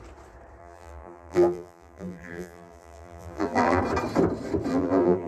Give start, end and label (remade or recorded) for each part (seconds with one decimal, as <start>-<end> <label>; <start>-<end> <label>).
0.0-0.6 recorded; 0.6-3.8 remade; 3.8-4.7 recorded; 4.7-5.3 remade